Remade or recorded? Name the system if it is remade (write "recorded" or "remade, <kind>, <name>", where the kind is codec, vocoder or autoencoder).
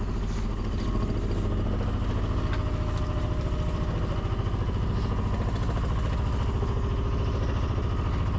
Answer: recorded